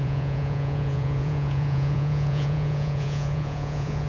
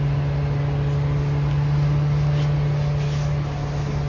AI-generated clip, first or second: first